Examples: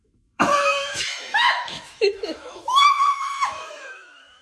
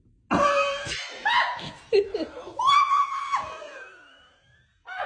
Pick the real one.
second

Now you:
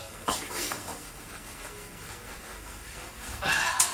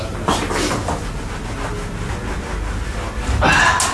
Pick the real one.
second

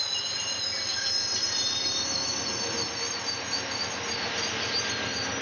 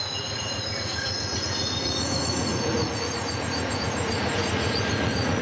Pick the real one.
first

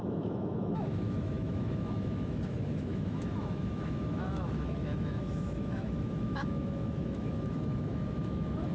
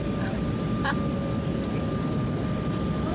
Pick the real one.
second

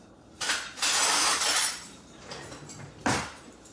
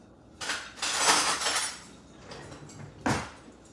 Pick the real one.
second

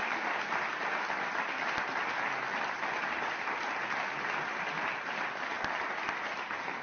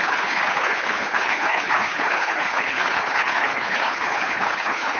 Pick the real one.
first